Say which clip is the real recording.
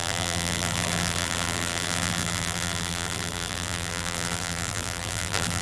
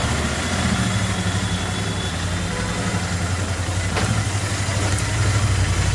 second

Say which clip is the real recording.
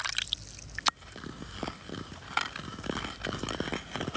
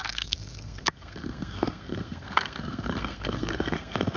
first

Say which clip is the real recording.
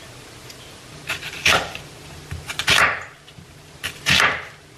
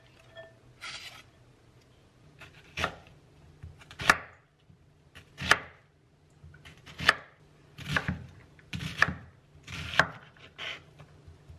second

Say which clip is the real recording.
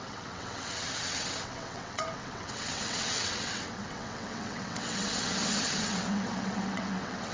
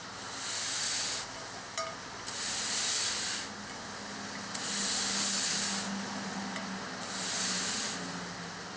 second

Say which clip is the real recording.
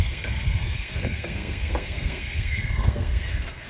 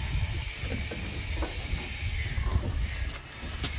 second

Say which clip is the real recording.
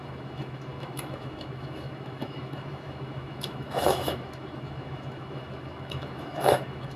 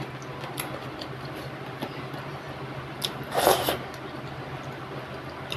second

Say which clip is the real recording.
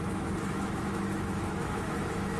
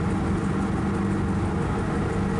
second